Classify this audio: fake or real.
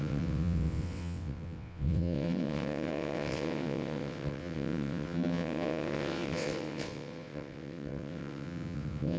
fake